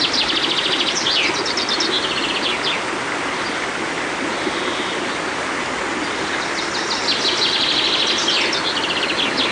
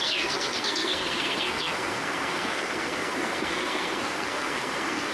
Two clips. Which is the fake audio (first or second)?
second